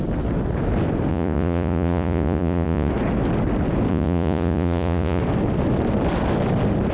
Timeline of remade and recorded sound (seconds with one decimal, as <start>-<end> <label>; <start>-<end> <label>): 0.0-1.1 recorded; 1.1-2.9 remade; 2.9-3.9 recorded; 3.9-5.2 remade; 5.2-6.9 recorded